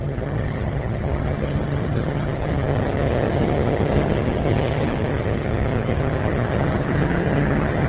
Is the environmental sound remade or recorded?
remade